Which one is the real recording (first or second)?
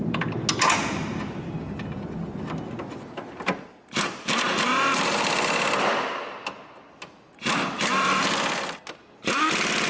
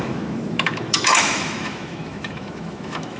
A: first